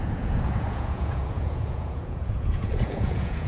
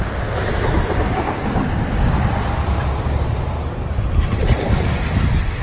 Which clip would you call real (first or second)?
second